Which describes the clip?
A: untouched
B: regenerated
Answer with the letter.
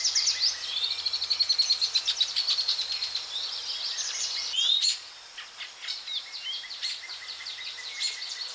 A